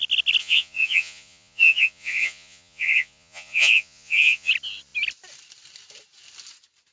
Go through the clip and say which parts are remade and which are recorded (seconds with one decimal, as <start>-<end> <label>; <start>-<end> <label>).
0.0-0.4 recorded; 0.4-4.5 remade; 4.5-6.9 recorded